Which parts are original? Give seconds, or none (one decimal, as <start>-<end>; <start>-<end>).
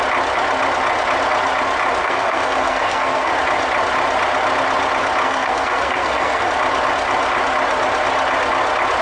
0.0-2.0; 3.3-5.2; 6.5-9.0